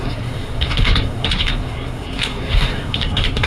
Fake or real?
fake